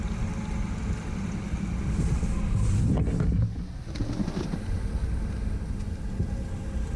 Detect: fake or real real